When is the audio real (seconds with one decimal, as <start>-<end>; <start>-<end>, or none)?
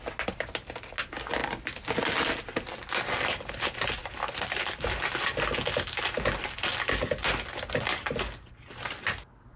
0.0-1.4; 3.5-4.0; 5.5-9.6